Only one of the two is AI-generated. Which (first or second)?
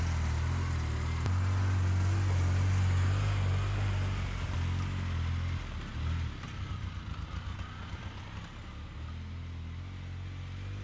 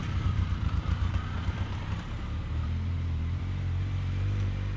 second